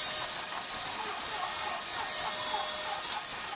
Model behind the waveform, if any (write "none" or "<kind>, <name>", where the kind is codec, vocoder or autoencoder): none